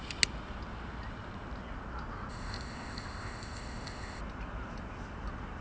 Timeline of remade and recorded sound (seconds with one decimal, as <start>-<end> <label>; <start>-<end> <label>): 0.0-2.3 recorded; 2.3-4.2 remade; 4.2-5.6 recorded